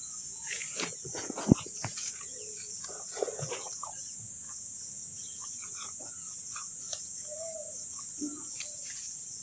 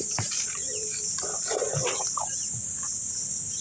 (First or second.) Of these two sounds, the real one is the second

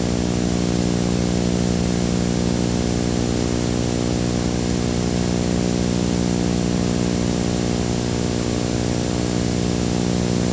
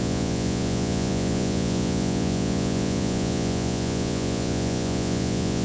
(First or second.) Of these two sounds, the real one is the first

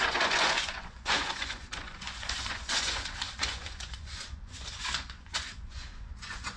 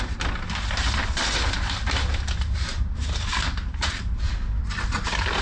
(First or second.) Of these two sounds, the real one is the second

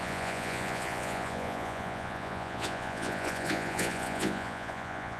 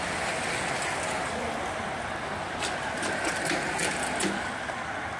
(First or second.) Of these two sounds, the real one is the second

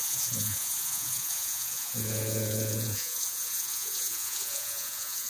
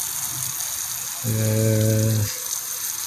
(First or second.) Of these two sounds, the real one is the second